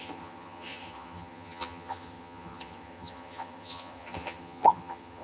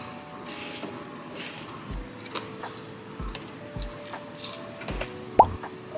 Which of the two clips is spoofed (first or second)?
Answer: first